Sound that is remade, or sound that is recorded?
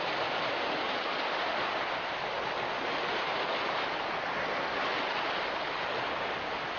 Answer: recorded